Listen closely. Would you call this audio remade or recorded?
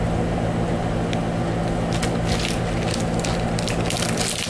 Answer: recorded